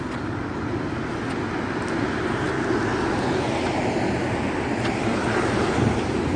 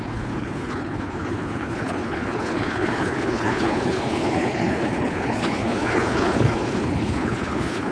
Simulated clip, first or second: second